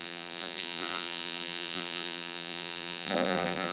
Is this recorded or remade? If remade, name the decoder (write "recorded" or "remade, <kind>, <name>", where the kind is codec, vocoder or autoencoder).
remade, vocoder, BigVGAN v2